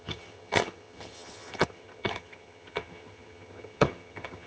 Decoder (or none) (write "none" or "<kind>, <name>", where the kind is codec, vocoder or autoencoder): vocoder, HiFi-GAN